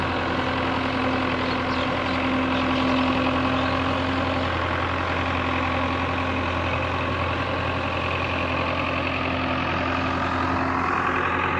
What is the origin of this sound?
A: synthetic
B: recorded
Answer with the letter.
B